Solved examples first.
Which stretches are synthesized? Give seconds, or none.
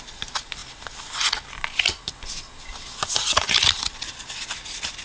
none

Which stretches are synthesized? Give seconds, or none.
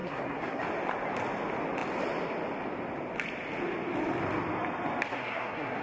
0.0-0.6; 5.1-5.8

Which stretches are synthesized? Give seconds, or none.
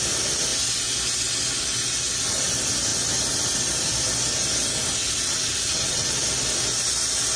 5.0-6.1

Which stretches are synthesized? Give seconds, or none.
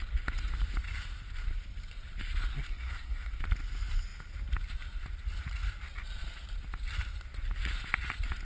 2.5-3.4